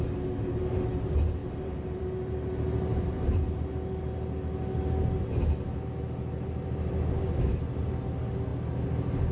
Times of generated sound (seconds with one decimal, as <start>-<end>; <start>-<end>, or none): 1.4-2.0; 2.9-3.7